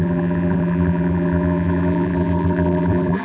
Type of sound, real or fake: fake